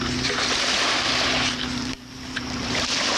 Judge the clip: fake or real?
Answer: fake